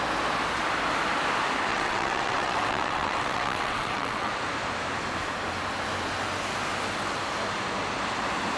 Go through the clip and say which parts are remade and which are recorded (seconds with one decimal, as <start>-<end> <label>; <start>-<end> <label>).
0.0-1.7 recorded; 1.7-4.3 remade; 4.3-8.6 recorded